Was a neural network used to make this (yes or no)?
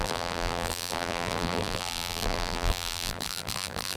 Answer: yes